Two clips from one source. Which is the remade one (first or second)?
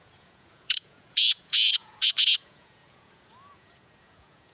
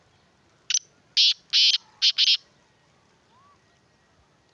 first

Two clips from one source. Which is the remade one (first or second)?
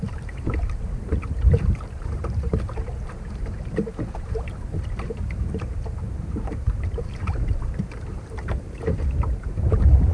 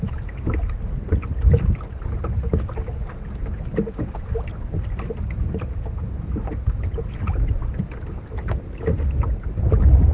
first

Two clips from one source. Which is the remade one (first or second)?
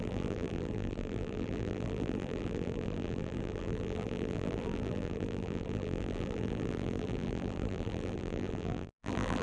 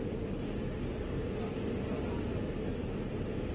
first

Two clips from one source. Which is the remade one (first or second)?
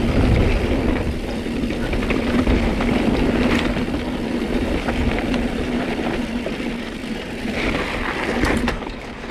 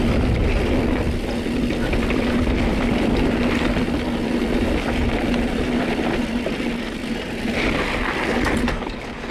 first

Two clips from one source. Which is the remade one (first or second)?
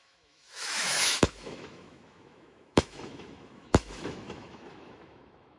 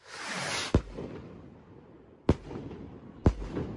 first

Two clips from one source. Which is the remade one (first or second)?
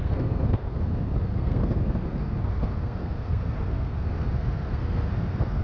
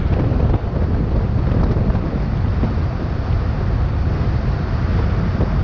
first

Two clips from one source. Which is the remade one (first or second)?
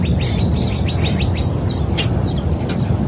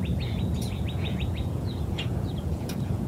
second